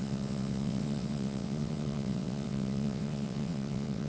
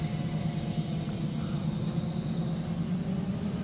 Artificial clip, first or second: first